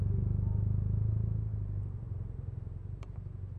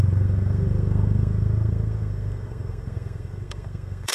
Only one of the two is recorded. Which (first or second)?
first